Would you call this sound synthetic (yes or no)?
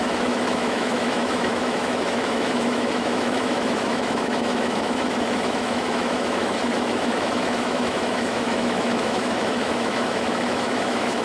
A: yes